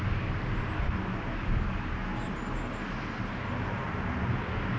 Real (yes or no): yes